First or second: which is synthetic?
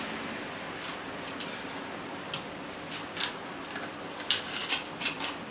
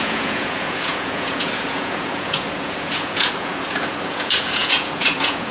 second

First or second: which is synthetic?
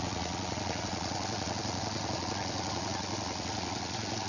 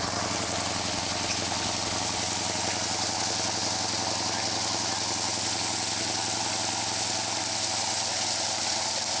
first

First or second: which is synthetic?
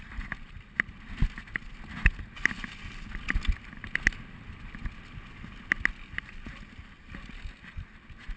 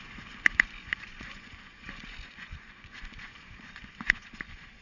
second